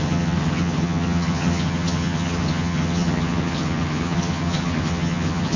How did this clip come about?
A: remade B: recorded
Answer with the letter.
A